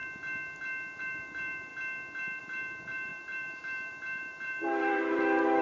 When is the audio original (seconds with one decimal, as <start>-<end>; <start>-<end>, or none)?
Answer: 0.0-1.0; 1.7-2.4